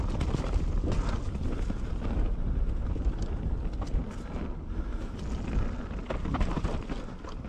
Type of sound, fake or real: real